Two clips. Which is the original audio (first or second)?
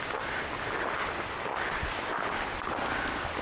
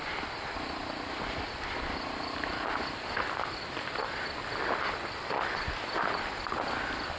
first